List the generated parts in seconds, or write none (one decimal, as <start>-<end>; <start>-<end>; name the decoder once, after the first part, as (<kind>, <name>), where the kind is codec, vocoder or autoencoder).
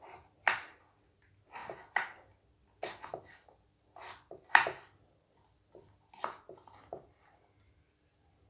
none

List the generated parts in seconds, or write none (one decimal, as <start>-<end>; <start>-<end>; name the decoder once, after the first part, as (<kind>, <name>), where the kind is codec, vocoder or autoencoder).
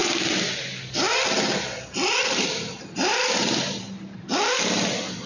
none